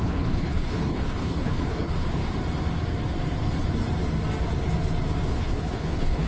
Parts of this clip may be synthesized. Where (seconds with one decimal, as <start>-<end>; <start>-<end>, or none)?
0.0-2.2; 5.3-6.3